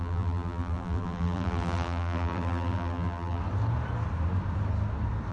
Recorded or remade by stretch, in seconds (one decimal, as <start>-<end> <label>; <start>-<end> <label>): 0.0-3.4 remade; 3.4-5.3 recorded